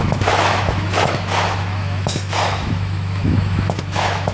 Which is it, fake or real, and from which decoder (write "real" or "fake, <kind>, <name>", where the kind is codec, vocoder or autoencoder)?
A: fake, autoencoder, DAC-VAE